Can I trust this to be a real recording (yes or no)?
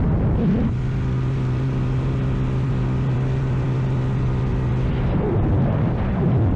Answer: yes